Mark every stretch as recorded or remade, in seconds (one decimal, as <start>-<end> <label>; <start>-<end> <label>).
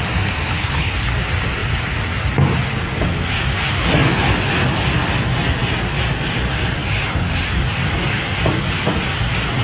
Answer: 0.0-0.5 recorded; 0.5-1.1 remade; 1.1-9.6 recorded